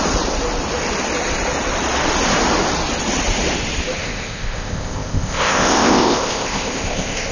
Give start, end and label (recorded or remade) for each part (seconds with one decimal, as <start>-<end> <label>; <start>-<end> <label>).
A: 0.0-4.0 recorded; 4.0-7.3 remade